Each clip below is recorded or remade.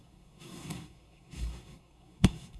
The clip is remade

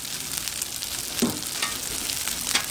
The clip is recorded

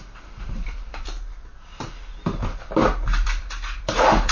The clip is remade